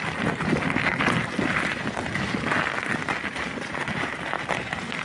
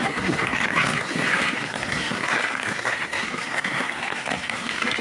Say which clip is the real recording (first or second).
first